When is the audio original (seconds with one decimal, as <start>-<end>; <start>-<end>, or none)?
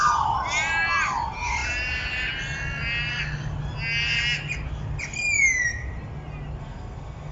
0.0-6.6